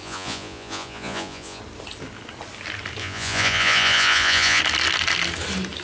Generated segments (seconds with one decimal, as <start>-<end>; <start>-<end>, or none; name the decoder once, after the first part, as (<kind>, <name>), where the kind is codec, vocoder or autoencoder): 0.0-1.6 (vocoder, Vocos); 3.0-4.6